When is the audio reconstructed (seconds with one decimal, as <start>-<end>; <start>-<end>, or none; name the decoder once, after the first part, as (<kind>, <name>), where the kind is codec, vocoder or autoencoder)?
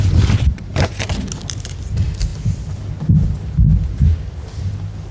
0.0-2.3 (vocoder, BigVGAN v2)